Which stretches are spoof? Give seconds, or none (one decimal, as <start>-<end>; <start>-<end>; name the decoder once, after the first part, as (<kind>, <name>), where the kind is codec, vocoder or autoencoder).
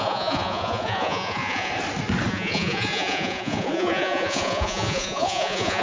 0.0-1.7 (vocoder, Vocos); 2.3-5.8